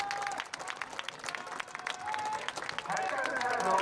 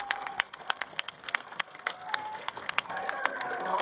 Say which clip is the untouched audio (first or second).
first